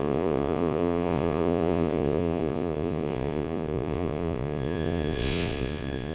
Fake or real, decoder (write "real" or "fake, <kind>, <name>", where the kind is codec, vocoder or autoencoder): fake, vocoder, Vocos